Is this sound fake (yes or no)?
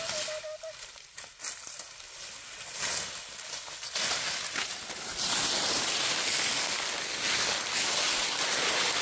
no